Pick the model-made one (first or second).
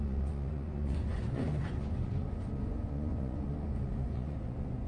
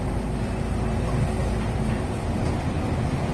first